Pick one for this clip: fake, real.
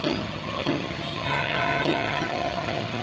fake